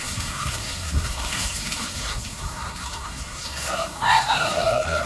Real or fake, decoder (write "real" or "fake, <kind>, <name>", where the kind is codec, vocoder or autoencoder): fake, codec, SNAC